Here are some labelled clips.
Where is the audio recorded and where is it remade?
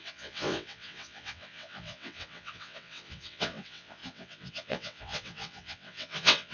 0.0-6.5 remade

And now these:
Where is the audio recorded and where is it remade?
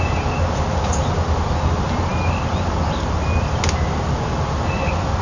0.0-5.2 recorded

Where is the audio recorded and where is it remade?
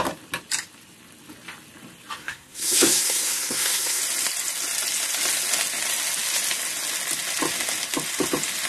0.0-2.2 recorded; 2.2-4.0 remade; 4.0-8.7 recorded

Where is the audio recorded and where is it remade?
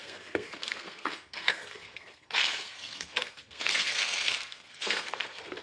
0.0-5.6 remade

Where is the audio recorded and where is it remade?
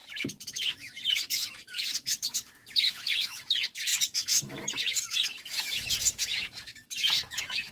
0.0-7.7 remade